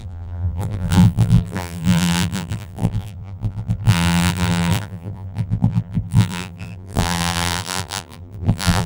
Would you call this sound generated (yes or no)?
yes